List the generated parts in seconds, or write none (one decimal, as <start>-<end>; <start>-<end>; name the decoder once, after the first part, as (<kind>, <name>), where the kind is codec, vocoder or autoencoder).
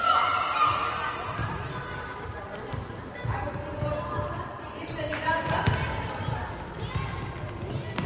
none